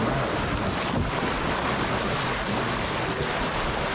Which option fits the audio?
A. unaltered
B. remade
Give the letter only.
A